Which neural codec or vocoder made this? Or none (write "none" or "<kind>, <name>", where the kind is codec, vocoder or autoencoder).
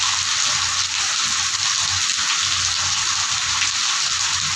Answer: none